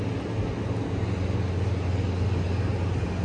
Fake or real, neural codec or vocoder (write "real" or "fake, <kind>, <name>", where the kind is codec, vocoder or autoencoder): real